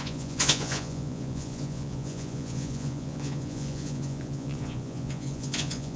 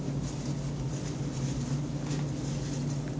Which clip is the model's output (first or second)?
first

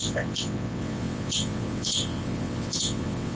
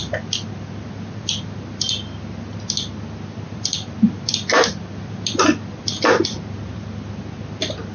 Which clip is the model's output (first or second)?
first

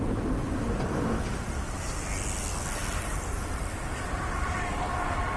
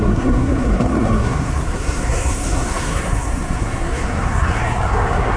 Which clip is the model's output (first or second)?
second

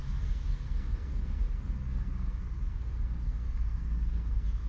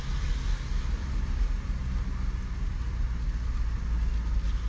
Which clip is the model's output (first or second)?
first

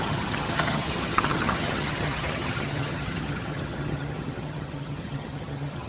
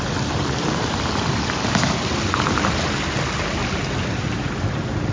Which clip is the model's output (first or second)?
first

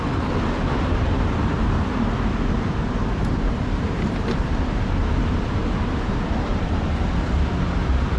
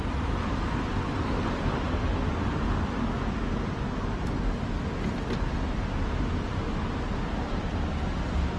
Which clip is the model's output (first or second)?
first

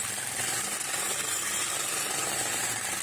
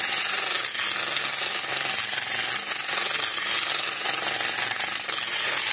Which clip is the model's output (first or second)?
first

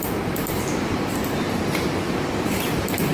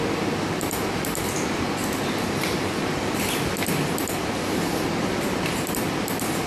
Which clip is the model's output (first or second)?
first